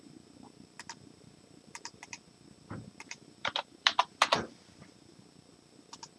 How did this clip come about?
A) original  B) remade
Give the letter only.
B